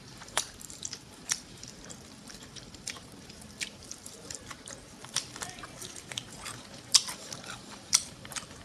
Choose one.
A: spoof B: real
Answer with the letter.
A